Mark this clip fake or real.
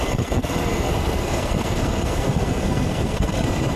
fake